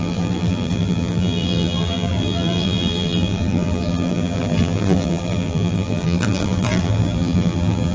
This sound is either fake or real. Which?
fake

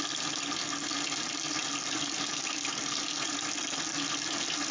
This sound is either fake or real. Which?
real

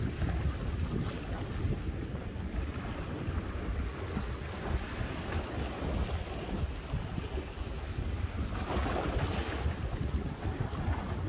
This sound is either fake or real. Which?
real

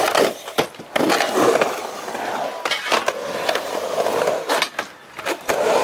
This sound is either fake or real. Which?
real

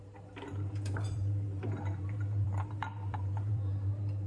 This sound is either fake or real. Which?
fake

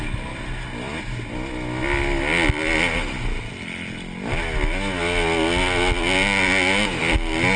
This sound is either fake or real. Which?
real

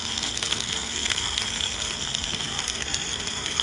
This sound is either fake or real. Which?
fake